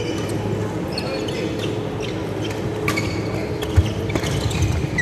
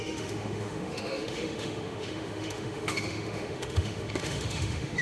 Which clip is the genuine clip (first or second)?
first